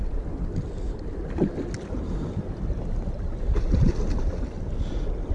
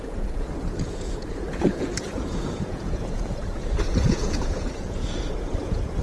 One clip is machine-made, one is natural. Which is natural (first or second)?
first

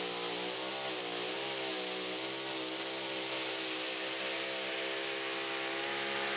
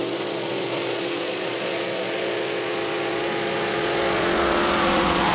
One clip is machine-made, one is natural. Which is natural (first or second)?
first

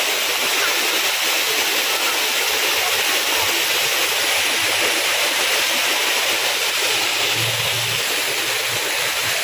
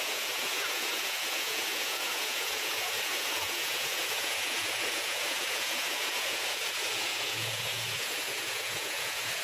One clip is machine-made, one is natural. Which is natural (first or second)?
first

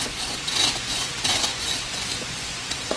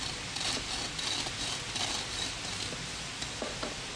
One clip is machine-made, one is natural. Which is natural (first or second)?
second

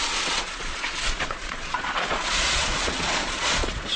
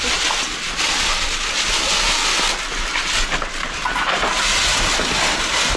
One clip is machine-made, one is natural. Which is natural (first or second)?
second